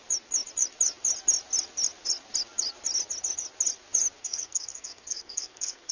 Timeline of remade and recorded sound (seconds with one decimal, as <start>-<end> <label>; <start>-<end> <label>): 0.0-4.2 recorded; 4.2-5.9 remade